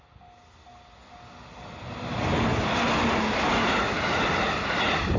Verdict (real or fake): real